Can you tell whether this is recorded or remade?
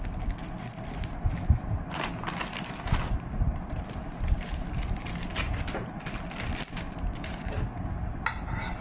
recorded